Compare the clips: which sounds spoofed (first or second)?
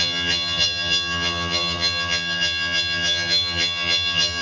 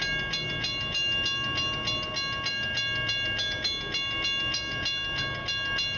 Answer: first